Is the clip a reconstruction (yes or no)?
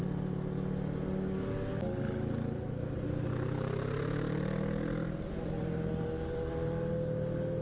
no